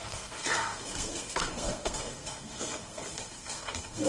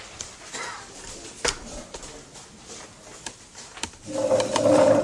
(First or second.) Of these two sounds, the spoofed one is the first